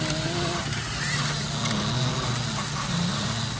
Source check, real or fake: real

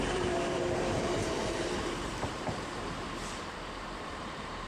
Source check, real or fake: fake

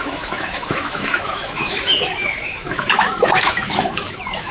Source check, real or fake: fake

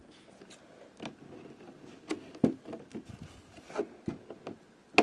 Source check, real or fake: real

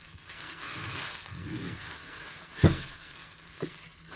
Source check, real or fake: fake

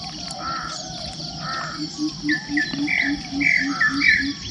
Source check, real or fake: real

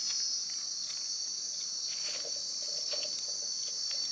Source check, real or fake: real